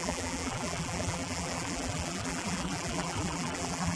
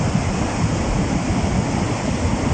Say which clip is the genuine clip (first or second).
second